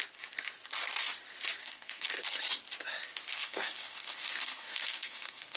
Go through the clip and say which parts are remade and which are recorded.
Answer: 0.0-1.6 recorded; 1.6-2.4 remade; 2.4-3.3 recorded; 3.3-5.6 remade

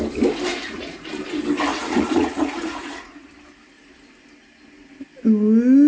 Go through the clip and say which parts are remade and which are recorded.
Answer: 0.0-0.5 recorded; 0.5-1.1 remade; 1.1-1.7 recorded; 1.7-3.3 remade; 3.3-5.9 recorded

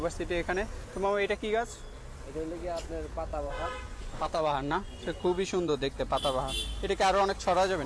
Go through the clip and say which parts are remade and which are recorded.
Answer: 0.0-3.3 recorded; 3.3-6.0 remade; 6.0-7.9 recorded

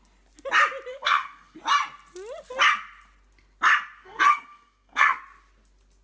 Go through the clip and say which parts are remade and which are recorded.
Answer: 0.0-0.9 recorded; 0.9-1.6 remade; 1.6-4.0 recorded; 4.0-5.2 remade; 5.2-6.0 recorded

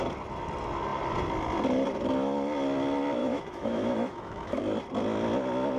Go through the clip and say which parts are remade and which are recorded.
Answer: 0.0-3.2 recorded; 3.2-4.6 remade; 4.6-5.8 recorded